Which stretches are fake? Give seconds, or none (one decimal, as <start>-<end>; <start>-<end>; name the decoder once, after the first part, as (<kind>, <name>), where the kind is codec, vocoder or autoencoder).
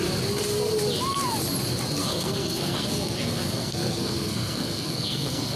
2.0-5.6 (codec, SNAC)